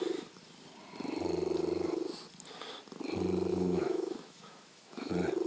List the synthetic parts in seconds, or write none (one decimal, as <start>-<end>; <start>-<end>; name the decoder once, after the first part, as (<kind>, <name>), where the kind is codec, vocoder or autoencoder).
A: 3.5-5.1 (autoencoder, DAC-VAE)

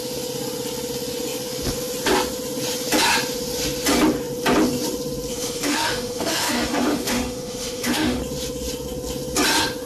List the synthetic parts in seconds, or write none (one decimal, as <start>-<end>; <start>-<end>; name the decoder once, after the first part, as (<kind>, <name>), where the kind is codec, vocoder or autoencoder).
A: 5.3-8.2 (autoencoder, DAC-VAE)

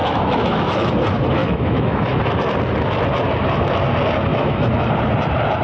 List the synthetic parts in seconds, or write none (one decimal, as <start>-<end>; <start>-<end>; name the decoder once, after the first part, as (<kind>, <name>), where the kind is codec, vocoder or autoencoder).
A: 0.0-0.9 (autoencoder, DAC-VAE); 1.4-2.2; 4.3-4.9

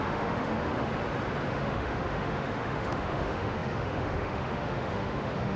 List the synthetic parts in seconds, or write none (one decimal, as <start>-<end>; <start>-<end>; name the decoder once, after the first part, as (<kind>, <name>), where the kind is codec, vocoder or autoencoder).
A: 0.0-0.9 (autoencoder, DAC-VAE); 1.5-5.6

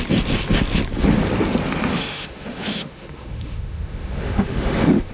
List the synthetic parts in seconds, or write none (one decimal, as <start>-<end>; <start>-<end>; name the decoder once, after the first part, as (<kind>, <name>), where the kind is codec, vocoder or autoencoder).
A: 1.9-5.1 (autoencoder, DAC-VAE)

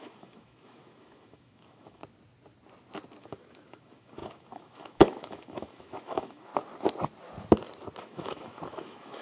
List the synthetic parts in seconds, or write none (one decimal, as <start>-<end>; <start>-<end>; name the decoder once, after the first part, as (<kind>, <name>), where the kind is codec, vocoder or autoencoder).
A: 0.0-2.0 (autoencoder, DAC-VAE); 3.2-6.5; 8.0-9.2